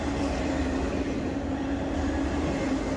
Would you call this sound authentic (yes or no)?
yes